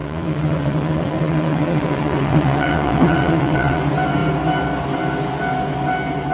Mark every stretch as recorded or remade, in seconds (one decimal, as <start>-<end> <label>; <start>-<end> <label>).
0.0-3.8 remade; 3.8-6.3 recorded